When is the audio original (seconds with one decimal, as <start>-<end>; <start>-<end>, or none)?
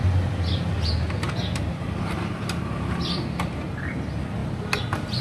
0.0-5.2